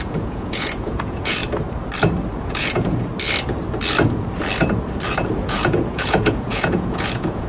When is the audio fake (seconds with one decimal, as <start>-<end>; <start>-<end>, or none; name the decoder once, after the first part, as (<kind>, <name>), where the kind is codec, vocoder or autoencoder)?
0.0-1.4 (vocoder, Vocos); 2.4-3.1; 5.4-7.5